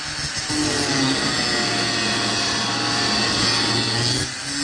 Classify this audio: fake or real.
real